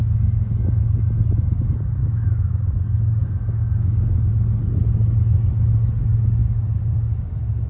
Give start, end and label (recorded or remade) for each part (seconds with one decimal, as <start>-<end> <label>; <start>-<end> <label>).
0.0-0.8 remade; 0.8-2.0 recorded; 2.0-2.5 remade; 2.5-3.2 recorded; 3.2-4.3 remade; 4.3-6.4 recorded; 6.4-7.7 remade